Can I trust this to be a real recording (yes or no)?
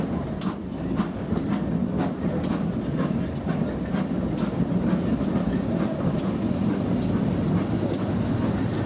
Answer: yes